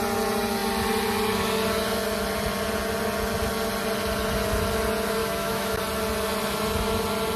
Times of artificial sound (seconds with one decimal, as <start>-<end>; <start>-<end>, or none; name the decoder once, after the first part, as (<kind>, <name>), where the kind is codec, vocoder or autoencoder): 5.2-5.8 (autoencoder, DAC-VAE)